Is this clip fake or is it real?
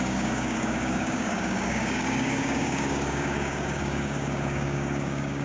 fake